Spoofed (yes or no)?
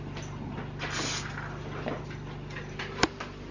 no